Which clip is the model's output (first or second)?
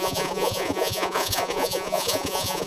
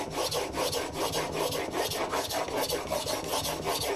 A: first